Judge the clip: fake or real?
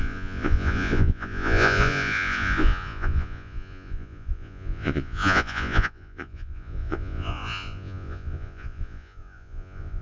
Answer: fake